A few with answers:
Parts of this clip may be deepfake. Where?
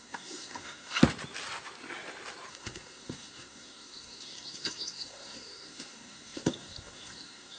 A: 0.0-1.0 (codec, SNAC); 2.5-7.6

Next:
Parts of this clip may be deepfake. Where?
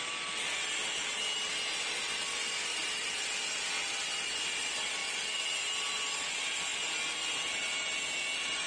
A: 2.7-3.2 (vocoder, BigVGAN v2); 5.0-6.0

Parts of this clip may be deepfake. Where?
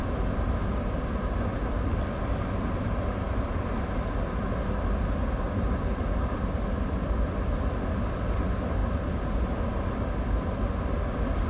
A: none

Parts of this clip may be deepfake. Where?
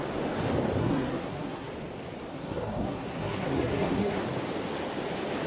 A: 0.8-1.7 (codec, SNAC); 2.3-4.2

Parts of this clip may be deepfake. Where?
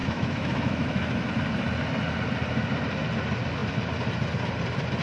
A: 0.0-1.3 (autoencoder, DAC-VAE)